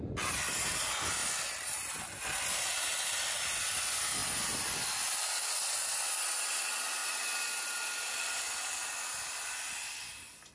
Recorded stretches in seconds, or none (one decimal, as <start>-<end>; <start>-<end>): 0.0-10.5